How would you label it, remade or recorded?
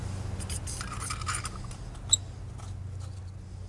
recorded